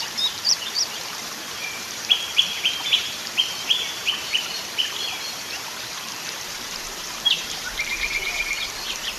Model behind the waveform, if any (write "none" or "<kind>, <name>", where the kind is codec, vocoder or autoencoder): vocoder, BigVGAN v2